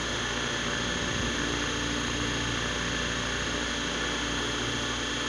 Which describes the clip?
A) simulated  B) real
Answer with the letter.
B